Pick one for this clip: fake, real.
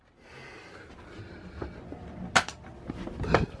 real